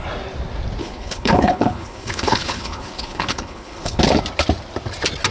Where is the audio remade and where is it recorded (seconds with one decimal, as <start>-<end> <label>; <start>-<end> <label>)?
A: 0.0-0.8 recorded; 0.8-4.0 remade; 4.0-5.3 recorded